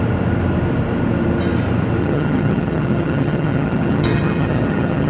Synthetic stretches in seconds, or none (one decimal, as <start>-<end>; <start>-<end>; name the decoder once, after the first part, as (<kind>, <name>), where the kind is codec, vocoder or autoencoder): 2.0-5.1 (vocoder, HiFi-GAN)